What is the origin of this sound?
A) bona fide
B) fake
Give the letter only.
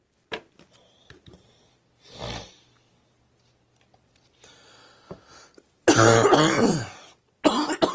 A